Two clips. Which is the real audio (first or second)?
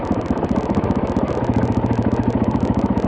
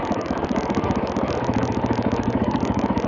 first